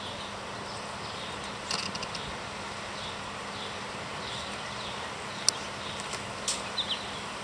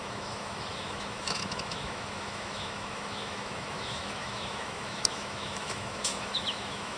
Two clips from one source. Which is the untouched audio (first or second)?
first